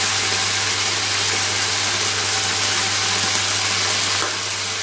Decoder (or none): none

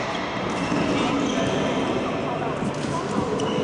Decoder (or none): none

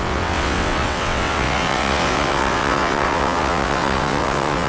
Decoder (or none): vocoder, WaveNeXt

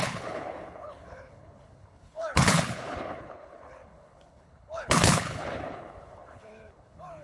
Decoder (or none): codec, HILCodec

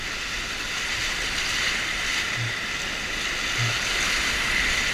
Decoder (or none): none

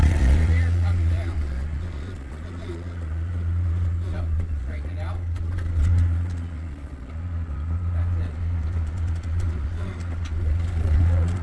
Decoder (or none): vocoder, Vocos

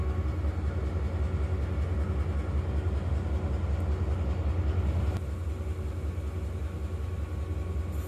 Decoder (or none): none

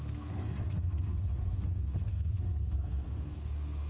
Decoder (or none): codec, SNAC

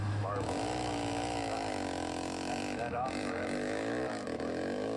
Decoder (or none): autoencoder, DAC-VAE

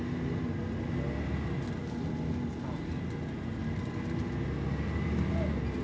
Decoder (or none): none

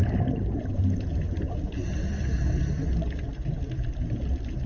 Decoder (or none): none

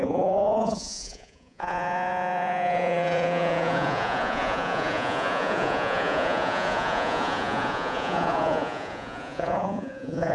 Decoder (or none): vocoder, Vocos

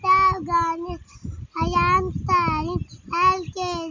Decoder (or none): none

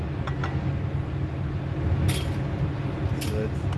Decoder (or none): none